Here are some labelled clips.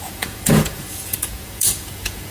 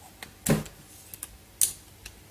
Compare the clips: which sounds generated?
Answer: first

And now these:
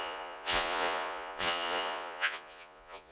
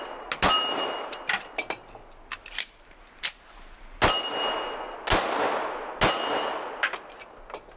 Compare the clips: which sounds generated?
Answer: first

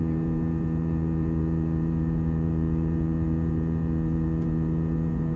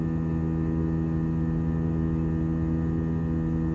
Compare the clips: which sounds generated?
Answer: first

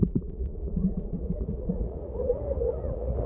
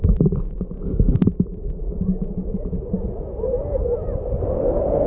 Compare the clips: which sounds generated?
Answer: first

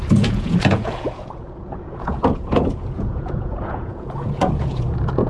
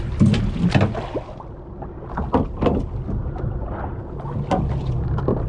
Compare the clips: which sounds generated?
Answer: first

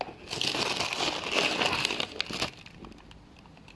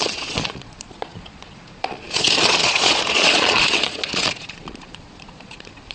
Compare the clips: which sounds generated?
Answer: second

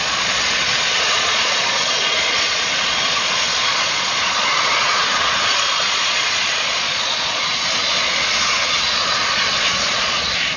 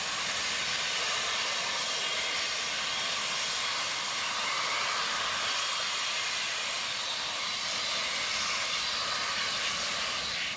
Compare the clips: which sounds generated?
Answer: first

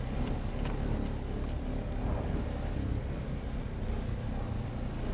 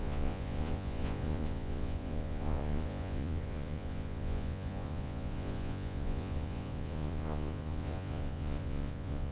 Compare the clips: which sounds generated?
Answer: second